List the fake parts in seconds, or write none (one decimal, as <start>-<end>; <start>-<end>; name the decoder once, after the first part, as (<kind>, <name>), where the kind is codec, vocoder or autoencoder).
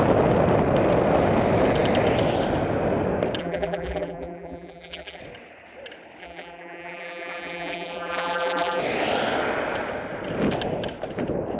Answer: 3.4-5.2 (vocoder, BigVGAN v2); 6.2-8.8